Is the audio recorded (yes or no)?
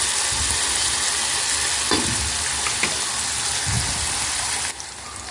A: yes